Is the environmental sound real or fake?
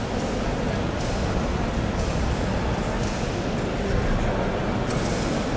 real